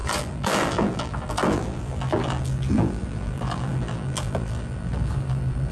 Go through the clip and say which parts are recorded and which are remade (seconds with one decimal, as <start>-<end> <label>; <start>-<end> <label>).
0.0-5.7 remade